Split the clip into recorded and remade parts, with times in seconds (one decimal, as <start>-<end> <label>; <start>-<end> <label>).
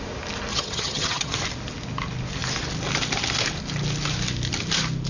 0.0-0.5 recorded; 0.5-1.3 remade; 1.3-5.1 recorded